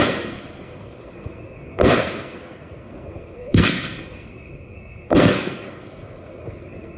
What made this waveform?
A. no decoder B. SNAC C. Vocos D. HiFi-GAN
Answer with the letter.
B